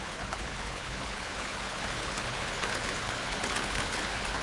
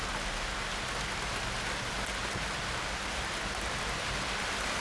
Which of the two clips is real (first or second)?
second